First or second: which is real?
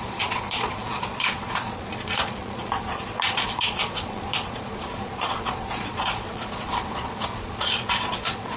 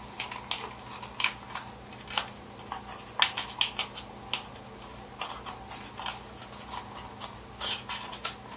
second